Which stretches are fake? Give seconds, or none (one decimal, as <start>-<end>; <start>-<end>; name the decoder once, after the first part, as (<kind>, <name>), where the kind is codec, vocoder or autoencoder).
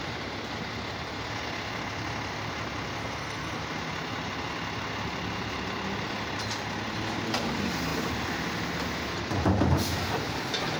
3.0-3.6 (codec, SNAC)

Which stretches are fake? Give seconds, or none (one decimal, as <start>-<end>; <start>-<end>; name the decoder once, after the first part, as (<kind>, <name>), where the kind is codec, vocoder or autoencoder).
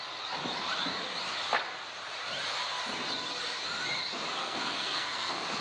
4.4-5.6 (codec, SNAC)